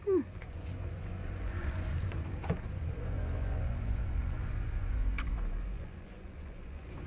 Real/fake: fake